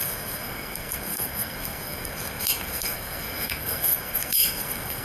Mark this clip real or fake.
fake